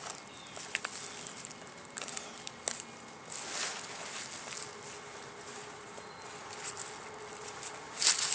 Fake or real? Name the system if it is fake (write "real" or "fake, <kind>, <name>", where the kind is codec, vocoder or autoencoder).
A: real